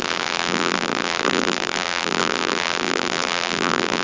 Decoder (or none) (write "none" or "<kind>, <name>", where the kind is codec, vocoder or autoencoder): vocoder, BigVGAN v2